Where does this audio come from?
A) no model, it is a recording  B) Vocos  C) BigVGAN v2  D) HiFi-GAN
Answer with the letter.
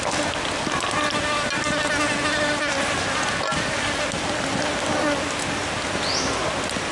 A